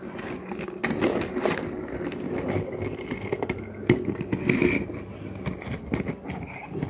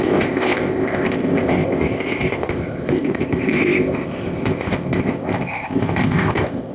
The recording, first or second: first